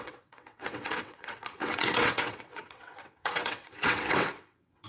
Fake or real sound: fake